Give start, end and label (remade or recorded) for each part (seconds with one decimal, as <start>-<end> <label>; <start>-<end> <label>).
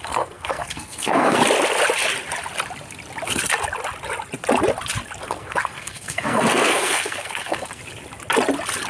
0.0-1.4 remade; 1.4-5.2 recorded; 5.2-7.8 remade; 7.8-8.9 recorded